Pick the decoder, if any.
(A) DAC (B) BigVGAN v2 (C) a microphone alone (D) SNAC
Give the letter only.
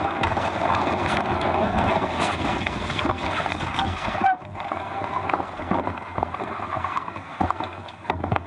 D